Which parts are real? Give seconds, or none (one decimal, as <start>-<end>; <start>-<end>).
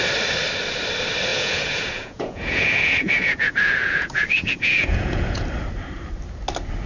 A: 0.0-1.3; 5.4-6.9